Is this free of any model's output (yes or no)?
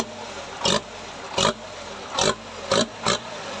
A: yes